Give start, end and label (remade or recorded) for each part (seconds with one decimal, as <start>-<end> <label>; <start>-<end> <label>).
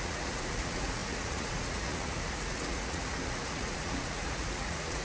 0.0-5.0 remade